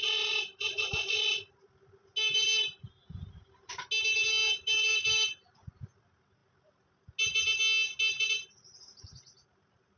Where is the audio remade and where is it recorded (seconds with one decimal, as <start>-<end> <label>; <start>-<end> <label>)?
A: 0.0-10.0 recorded